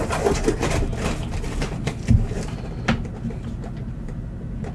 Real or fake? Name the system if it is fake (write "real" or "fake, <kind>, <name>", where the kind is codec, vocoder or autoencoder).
real